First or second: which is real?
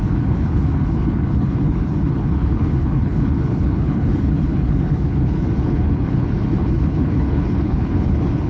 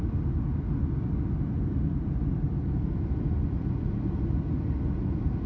second